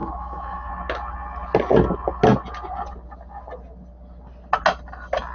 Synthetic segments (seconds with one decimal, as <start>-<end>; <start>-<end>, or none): 0.0-0.7